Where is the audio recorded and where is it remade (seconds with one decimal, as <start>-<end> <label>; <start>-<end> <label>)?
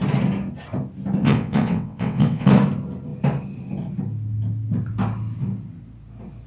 0.0-1.2 recorded; 1.2-2.5 remade; 2.5-6.5 recorded